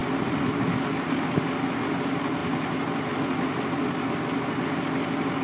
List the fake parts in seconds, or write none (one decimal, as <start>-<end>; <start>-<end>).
0.0-0.6